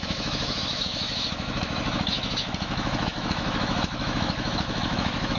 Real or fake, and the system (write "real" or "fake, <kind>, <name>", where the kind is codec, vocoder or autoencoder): fake, autoencoder, DAC-VAE